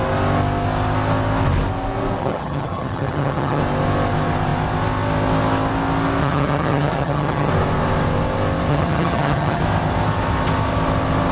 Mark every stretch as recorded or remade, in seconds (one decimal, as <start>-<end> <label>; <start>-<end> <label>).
0.0-2.2 recorded; 2.2-3.6 remade; 3.6-6.2 recorded; 6.2-7.5 remade; 7.5-8.7 recorded; 8.7-9.6 remade; 9.6-11.3 recorded